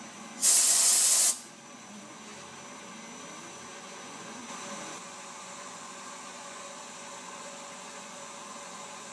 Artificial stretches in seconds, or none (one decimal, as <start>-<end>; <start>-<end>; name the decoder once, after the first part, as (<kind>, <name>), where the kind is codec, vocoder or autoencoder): 0.0-2.3 (vocoder, Vocos); 3.4-9.1